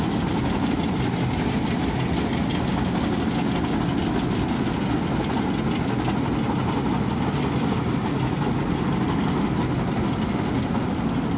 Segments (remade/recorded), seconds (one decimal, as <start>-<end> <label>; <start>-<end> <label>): 0.0-11.4 recorded